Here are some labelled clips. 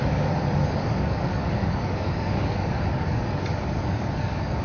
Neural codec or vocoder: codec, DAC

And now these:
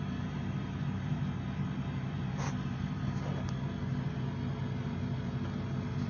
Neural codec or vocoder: none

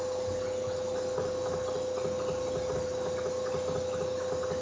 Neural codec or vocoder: none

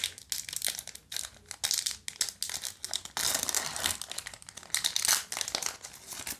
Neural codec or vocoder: none